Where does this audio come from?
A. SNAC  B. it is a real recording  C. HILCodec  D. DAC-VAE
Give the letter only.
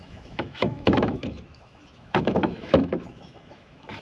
D